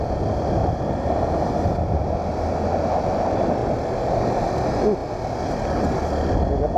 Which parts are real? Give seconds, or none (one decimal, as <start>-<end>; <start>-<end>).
0.0-0.6; 2.0-6.8